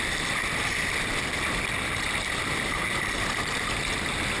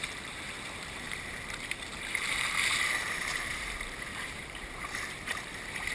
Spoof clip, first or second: second